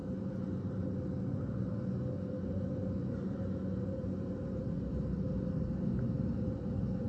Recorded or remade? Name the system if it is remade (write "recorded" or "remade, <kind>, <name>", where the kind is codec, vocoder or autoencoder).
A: recorded